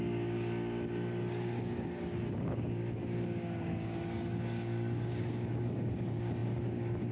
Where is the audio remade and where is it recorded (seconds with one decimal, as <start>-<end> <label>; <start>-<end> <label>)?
0.0-7.1 remade